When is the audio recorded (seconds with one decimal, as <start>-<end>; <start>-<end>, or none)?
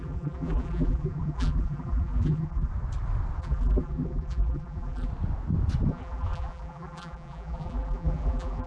2.7-3.4; 5.1-5.9